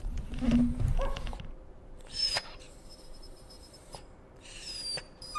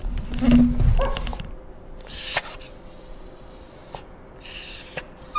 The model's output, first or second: first